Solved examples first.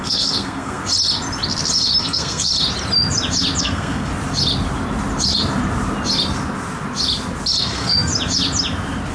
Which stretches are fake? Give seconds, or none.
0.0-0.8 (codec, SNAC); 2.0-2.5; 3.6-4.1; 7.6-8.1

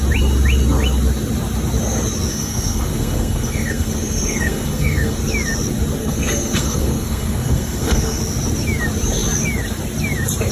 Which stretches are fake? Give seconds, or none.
2.3-5.2 (codec, SNAC); 6.0-8.2

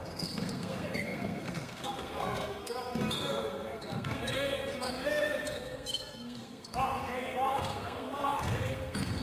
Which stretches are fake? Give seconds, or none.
0.0-9.2 (codec, SNAC)

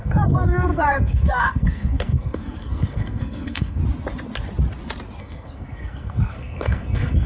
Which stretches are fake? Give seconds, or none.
0.0-3.8 (codec, SNAC); 5.2-7.3

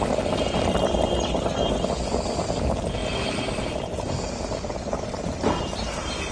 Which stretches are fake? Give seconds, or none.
none